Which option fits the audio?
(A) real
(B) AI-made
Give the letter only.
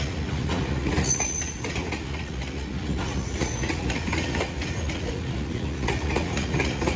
B